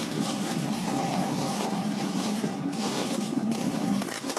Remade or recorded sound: remade